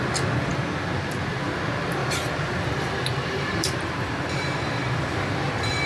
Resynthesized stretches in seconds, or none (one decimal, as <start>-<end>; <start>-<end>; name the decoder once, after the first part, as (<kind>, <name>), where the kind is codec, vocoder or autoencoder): 2.0-5.5 (vocoder, BigVGAN v2)